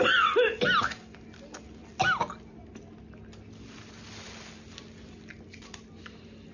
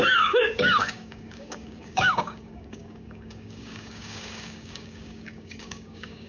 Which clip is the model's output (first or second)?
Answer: second